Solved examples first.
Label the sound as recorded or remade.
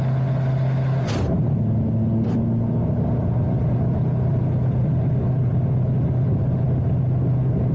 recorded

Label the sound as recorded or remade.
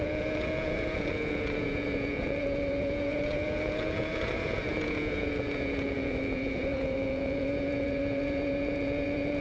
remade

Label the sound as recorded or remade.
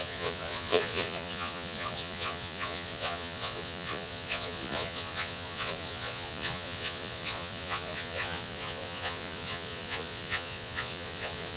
remade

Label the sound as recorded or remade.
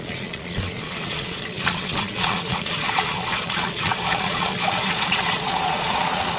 remade